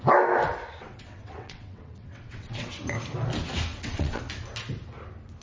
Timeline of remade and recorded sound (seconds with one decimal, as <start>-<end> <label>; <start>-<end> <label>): 0.0-0.8 recorded; 0.8-2.8 remade; 2.8-3.7 recorded; 3.7-4.2 remade; 4.2-5.4 recorded